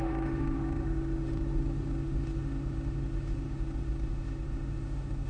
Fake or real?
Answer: fake